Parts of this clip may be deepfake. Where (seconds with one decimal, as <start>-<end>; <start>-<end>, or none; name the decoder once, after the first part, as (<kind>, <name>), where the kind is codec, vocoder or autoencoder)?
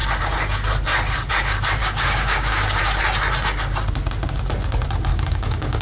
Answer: 1.8-2.8 (codec, DAC); 5.1-5.8